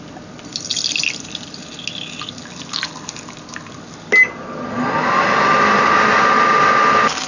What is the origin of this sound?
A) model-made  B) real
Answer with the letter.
B